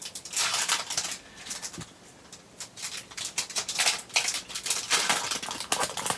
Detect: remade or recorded recorded